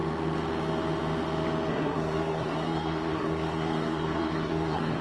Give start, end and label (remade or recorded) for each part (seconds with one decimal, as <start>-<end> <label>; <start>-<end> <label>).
0.0-1.7 recorded; 1.7-5.0 remade